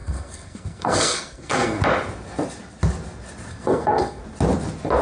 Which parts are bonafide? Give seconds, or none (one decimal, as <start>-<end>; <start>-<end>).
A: 1.8-3.5; 4.2-5.0